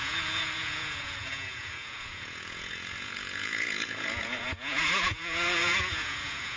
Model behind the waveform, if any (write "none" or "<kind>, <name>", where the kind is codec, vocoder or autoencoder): vocoder, Vocos